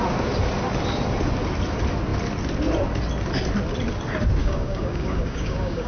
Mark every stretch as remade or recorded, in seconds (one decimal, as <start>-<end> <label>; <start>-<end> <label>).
0.0-4.4 recorded; 4.4-5.9 remade